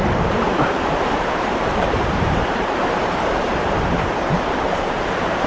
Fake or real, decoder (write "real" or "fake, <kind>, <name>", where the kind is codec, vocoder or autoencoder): fake, vocoder, BigVGAN v2